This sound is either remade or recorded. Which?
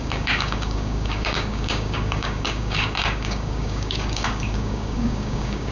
remade